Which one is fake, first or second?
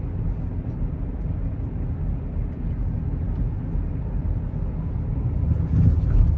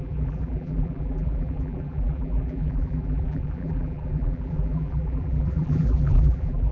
second